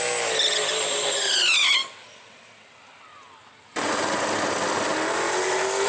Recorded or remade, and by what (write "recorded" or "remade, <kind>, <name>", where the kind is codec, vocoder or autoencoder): recorded